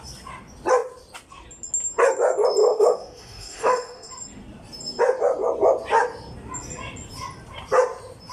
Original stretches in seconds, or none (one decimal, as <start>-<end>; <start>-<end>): 0.0-2.6; 4.1-8.3